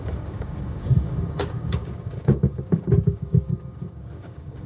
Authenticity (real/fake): fake